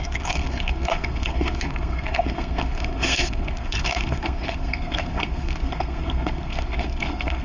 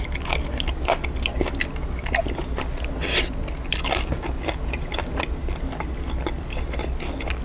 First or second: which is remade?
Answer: first